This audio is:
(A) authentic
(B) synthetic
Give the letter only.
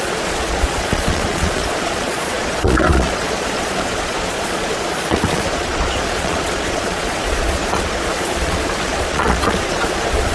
B